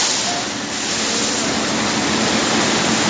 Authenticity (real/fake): real